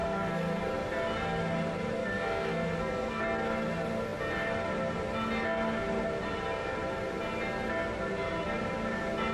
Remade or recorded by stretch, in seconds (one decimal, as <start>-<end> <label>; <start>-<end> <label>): 0.0-0.6 remade; 0.6-2.0 recorded; 2.0-3.2 remade; 3.2-9.3 recorded